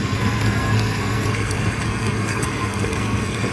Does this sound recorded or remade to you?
remade